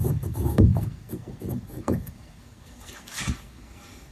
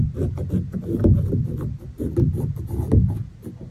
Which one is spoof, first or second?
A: first